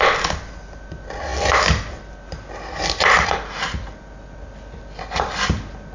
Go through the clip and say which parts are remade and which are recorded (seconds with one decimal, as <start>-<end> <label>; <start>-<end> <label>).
0.0-5.9 recorded